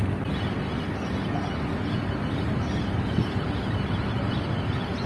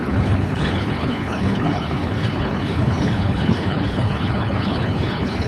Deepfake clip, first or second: second